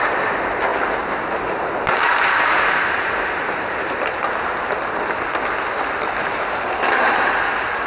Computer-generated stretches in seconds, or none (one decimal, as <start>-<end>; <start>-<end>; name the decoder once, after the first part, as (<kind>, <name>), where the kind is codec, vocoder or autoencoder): 2.8-4.0 (vocoder, BigVGAN v2); 6.2-6.7

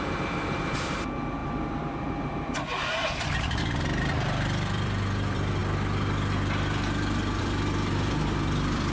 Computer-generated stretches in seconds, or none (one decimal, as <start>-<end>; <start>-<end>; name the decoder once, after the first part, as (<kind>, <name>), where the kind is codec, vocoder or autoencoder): 0.0-8.9 (vocoder, BigVGAN v2)

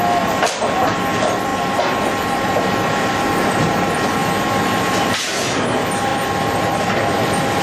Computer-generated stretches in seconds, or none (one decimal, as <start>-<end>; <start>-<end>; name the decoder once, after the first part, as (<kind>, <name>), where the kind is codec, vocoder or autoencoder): 0.0-1.5 (vocoder, BigVGAN v2); 2.1-6.1

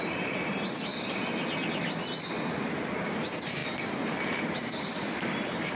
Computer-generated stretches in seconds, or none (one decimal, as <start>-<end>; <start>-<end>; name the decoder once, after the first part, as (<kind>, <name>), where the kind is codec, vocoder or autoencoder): 0.0-0.9 (vocoder, BigVGAN v2); 2.3-3.6; 4.2-5.7

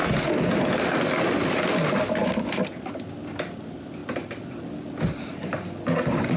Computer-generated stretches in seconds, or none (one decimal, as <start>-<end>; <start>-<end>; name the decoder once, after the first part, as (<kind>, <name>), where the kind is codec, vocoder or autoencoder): none

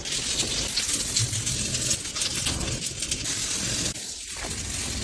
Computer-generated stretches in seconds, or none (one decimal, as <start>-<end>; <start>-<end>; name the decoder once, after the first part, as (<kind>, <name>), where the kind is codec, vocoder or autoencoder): none

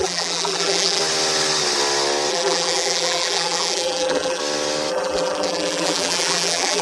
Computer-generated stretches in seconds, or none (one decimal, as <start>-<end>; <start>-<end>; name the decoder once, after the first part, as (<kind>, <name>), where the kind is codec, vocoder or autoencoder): 0.0-1.0 (vocoder, BigVGAN v2); 2.3-4.4; 4.9-6.8